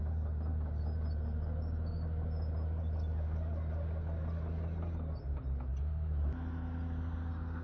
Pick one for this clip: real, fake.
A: real